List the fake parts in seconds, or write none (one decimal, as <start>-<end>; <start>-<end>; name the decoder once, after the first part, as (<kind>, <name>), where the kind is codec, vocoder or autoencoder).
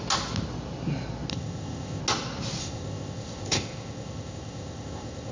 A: 1.3-2.0 (codec, ZipCodec); 2.6-5.3